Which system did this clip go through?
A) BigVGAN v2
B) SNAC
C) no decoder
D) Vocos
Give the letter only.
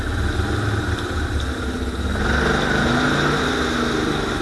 C